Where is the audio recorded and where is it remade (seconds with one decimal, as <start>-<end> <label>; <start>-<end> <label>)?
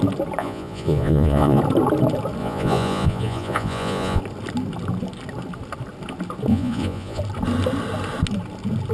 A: 0.0-0.4 recorded; 0.4-1.6 remade; 1.6-2.4 recorded; 2.4-4.2 remade; 4.2-6.5 recorded; 6.5-7.2 remade; 7.2-8.9 recorded